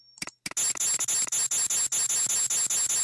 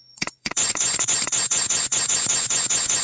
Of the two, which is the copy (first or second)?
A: second